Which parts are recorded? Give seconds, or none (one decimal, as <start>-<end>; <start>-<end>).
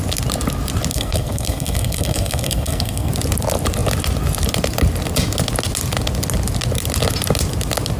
0.0-0.9; 3.1-8.0